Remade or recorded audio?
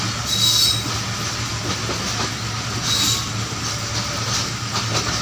recorded